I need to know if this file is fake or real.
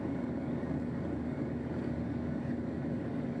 fake